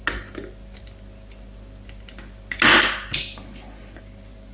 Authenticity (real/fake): real